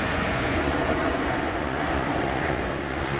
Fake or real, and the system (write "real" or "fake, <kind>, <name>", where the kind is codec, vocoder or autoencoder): fake, vocoder, Vocos